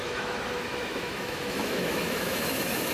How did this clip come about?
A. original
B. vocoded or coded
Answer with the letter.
B